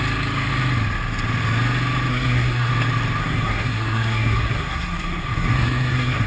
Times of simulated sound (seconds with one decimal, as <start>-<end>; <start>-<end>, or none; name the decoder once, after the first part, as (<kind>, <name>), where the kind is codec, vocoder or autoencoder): 2.1-2.7 (codec, SNAC); 3.2-6.3